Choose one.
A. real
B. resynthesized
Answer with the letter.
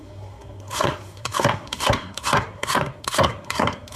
B